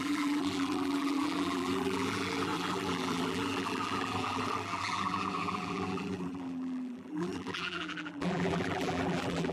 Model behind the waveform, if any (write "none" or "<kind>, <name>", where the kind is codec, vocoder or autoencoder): vocoder, BigVGAN v2